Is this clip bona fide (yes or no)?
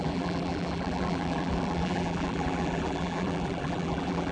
no